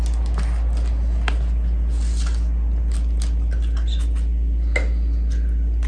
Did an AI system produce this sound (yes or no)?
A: no